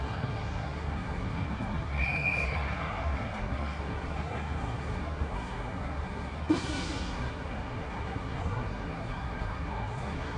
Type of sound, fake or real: fake